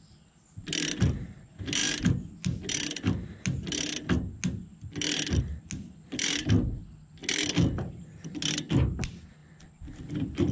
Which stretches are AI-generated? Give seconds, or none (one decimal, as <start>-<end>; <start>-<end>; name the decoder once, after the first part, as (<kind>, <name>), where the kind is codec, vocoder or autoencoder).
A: none